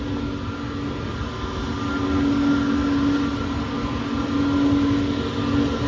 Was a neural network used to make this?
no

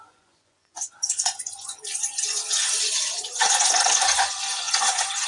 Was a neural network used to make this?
yes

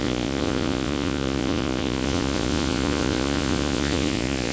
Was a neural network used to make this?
yes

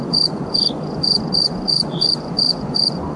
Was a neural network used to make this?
yes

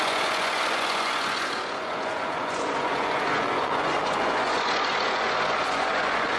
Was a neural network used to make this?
yes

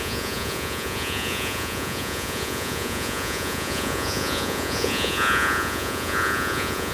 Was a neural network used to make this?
yes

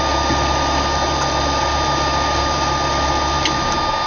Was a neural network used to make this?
no